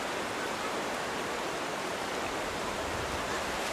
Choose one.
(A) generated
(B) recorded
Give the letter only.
A